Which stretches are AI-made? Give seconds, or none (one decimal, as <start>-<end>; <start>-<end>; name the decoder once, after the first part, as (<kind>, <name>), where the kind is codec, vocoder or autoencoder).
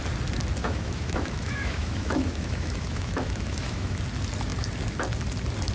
0.6-4.0 (autoencoder, DAC-VAE)